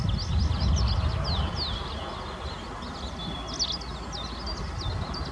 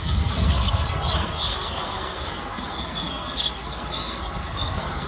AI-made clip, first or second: second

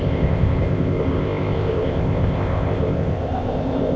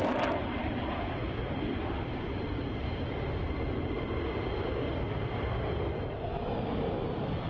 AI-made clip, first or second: first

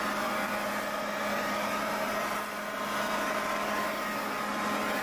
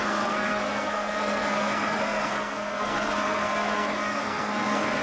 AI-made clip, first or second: second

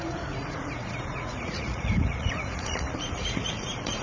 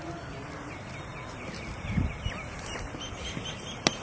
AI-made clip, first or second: first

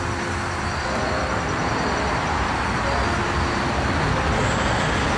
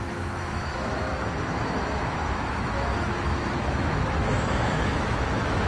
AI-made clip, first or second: second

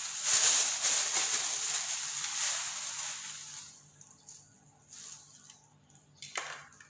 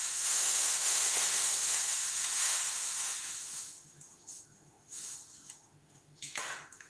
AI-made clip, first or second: second